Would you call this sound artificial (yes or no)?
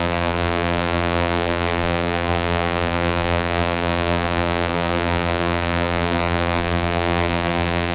yes